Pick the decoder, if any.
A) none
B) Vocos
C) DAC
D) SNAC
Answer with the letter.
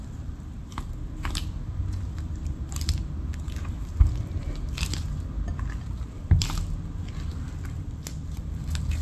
A